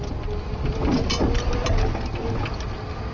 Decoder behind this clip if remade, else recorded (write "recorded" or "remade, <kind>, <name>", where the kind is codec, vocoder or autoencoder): recorded